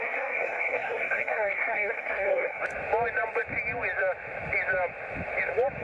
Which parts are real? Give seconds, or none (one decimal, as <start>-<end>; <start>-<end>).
2.6-5.8